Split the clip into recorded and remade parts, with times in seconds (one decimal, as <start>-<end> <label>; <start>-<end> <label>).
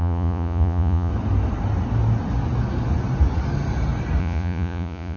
0.0-1.1 remade; 1.1-4.2 recorded; 4.2-5.2 remade